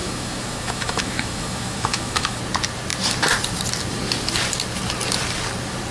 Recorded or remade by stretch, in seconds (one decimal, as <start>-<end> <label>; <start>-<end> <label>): 0.0-2.4 remade; 2.4-5.9 recorded